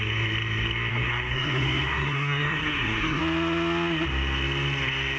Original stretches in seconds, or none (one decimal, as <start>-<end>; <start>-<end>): 0.0-0.9; 3.2-5.2